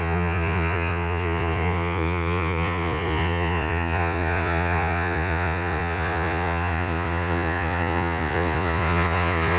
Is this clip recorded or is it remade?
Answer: remade